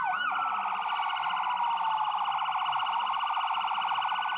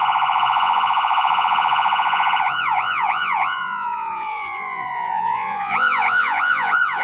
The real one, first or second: first